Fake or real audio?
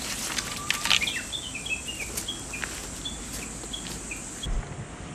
real